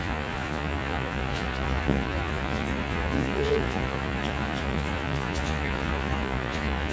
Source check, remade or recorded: remade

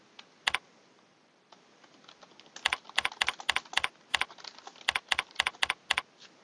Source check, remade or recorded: recorded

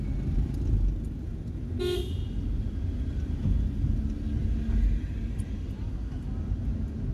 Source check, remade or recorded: recorded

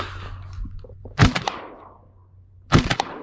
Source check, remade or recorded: recorded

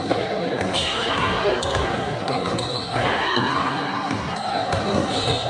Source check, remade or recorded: remade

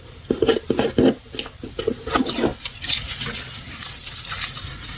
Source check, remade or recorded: recorded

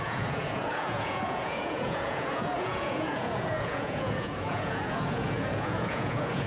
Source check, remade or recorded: remade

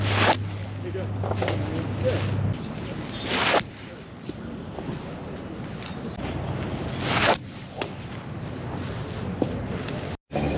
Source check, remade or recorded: recorded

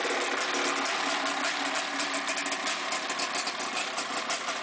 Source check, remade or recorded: recorded